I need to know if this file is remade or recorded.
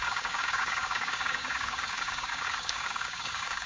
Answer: remade